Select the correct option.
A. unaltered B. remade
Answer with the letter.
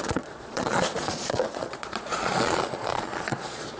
B